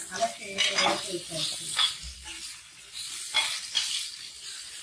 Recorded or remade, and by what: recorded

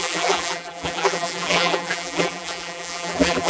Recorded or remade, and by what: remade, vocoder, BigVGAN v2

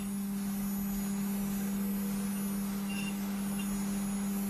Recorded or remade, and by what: recorded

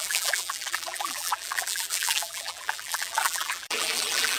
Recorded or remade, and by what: remade, vocoder, BigVGAN v2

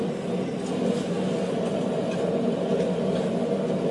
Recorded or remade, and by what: recorded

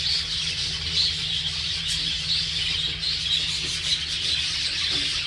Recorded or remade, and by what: recorded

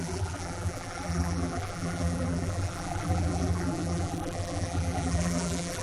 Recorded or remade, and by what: remade, vocoder, BigVGAN v2